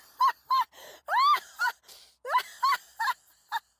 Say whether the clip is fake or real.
real